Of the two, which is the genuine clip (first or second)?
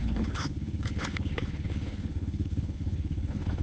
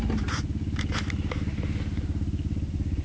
second